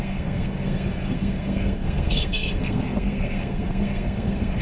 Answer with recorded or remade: remade